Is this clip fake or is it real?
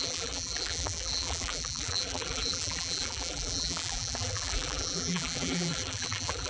fake